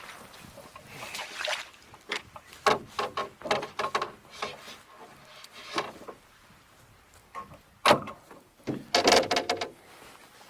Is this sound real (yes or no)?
yes